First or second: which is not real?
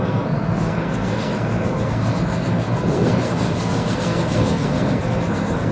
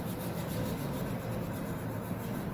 first